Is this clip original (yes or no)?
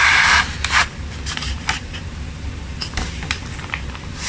yes